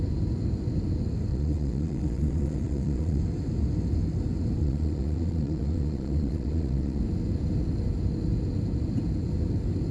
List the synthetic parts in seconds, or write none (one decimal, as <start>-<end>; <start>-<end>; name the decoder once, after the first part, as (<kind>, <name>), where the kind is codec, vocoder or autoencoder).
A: 1.3-3.2 (vocoder, Vocos); 4.6-7.0